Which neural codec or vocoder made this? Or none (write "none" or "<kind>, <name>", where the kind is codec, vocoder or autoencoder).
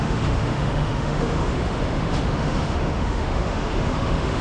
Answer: autoencoder, DAC-VAE